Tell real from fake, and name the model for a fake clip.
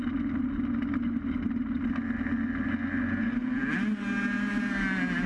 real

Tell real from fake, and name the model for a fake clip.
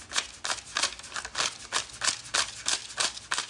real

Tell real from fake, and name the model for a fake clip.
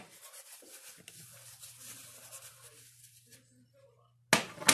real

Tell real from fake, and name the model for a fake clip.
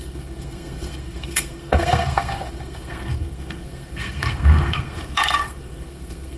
fake, codec, SNAC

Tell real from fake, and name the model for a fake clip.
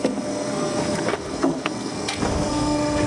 fake, codec, SNAC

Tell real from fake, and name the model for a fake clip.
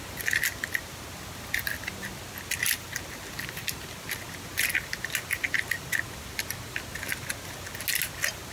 real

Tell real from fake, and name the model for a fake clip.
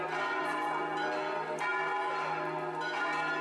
real